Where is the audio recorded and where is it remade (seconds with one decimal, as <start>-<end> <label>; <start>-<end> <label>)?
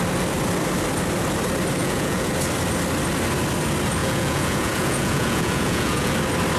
0.0-1.8 recorded; 1.8-2.3 remade; 2.3-4.0 recorded; 4.0-6.1 remade; 6.1-6.6 recorded